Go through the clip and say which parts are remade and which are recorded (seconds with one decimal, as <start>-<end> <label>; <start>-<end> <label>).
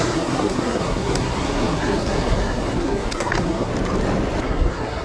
0.0-3.7 remade; 3.7-4.4 recorded; 4.4-5.0 remade